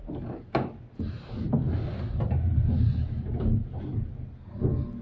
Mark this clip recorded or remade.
recorded